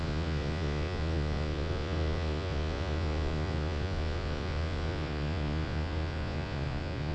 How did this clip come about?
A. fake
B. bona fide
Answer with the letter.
A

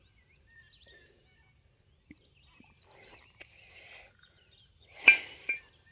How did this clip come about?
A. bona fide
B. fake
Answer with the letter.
A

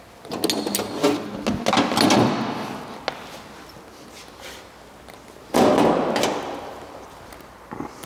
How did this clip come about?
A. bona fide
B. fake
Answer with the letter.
A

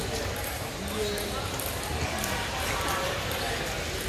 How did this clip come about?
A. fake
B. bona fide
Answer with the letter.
B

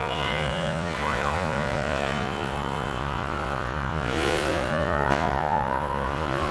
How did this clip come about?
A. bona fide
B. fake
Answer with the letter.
B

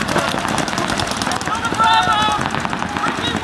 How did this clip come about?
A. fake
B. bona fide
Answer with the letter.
B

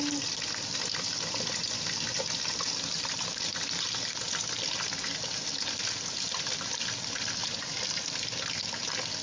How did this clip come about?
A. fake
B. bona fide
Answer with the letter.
B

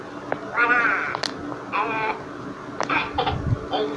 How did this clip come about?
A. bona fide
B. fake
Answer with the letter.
A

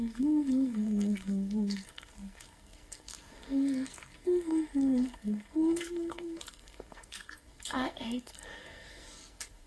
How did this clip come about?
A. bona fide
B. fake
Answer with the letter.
B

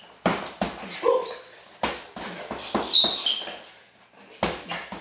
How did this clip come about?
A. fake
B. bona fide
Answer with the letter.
B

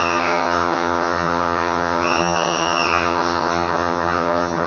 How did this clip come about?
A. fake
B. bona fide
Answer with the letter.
A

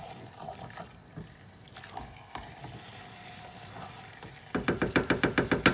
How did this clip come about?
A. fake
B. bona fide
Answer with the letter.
B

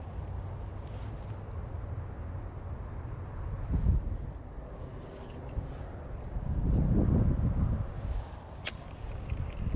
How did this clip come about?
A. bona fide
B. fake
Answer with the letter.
A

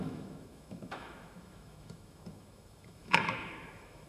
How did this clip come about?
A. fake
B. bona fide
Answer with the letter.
A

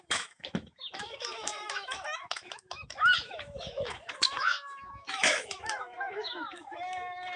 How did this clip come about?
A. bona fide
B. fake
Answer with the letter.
B